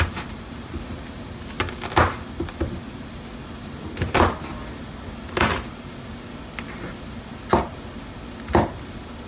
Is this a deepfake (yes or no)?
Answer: no